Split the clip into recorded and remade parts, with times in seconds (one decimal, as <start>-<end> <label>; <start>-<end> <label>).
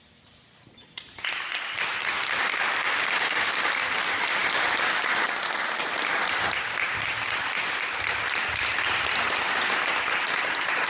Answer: 0.0-2.8 recorded; 2.8-3.7 remade; 3.7-10.9 recorded